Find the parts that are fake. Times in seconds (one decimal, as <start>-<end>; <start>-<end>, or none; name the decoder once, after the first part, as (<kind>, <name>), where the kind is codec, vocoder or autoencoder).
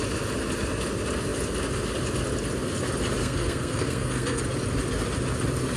3.2-4.4 (codec, SNAC)